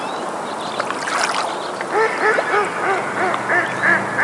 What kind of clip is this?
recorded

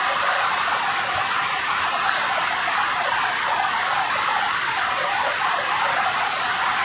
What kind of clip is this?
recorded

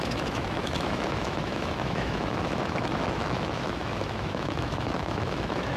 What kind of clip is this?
remade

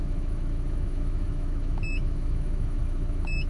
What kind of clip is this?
remade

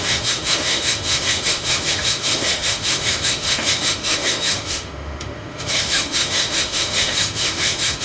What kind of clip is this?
remade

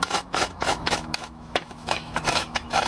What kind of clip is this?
remade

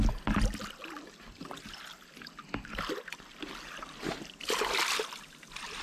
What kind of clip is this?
recorded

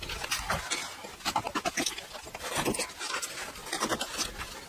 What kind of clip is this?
recorded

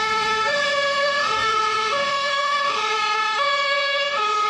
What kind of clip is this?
remade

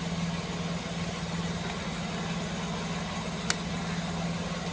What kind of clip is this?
recorded